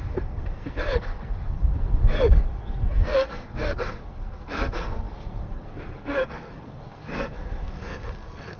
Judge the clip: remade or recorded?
remade